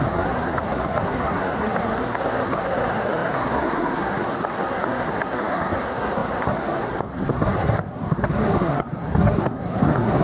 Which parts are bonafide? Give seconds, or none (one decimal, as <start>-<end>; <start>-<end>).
none